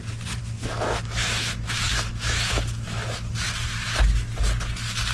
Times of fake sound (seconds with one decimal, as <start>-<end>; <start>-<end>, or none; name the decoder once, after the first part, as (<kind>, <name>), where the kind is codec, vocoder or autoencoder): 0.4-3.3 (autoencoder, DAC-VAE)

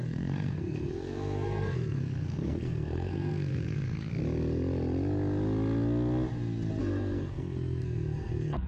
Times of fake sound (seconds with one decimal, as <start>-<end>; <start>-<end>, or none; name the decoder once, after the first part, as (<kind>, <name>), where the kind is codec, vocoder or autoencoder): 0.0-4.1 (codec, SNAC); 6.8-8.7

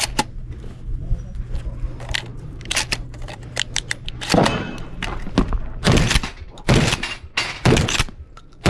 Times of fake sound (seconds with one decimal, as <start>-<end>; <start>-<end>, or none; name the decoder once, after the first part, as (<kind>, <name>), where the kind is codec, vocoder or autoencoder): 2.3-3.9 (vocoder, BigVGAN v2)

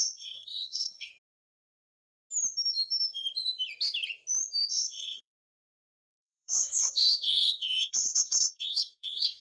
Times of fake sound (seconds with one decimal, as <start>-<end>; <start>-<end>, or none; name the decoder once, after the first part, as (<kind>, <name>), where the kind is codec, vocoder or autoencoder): 0.0-1.1 (codec, SNAC); 4.7-9.4

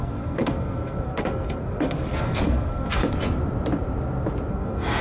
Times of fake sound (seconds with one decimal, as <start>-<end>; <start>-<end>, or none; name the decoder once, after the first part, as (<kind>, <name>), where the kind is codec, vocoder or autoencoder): 0.0-3.0 (codec, SNAC); 4.5-5.0

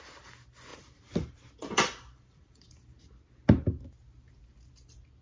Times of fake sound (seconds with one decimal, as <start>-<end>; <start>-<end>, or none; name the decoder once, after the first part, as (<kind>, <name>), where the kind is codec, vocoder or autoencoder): 0.7-2.6 (vocoder, BigVGAN v2)

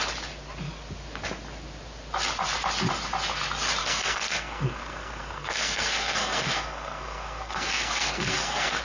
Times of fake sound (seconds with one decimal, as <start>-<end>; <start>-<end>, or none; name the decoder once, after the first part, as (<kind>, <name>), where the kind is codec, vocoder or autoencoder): 3.8-8.8 (codec, SNAC)

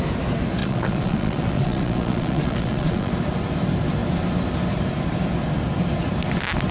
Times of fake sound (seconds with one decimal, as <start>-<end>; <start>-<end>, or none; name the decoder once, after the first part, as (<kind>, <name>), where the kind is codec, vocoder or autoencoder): 0.6-3.1 (vocoder, Vocos)